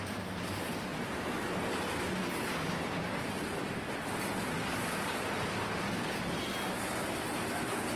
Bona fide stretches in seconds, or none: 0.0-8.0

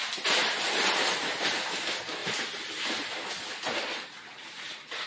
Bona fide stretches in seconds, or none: 0.0-5.1